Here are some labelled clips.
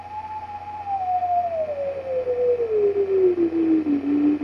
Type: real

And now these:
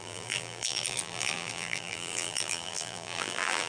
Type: fake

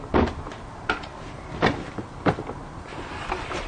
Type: real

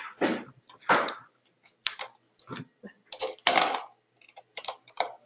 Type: fake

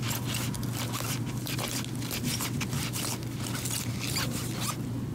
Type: real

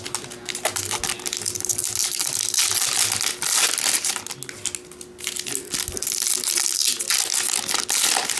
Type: real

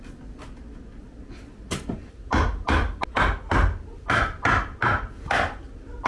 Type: real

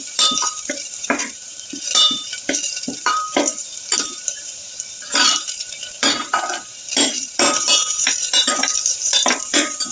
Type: fake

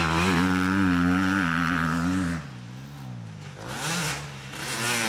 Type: real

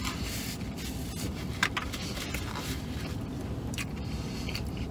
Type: fake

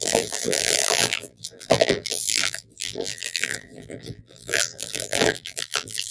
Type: fake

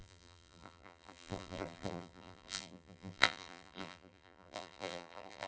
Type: fake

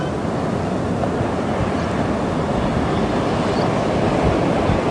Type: real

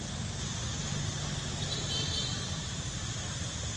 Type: real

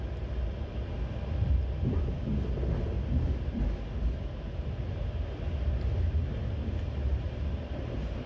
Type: real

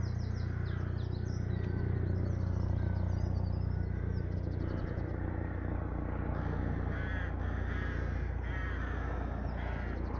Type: real